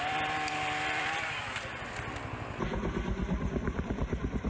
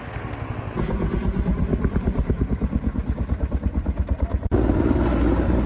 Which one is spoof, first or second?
first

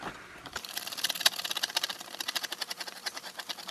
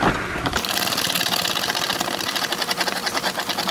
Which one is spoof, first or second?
first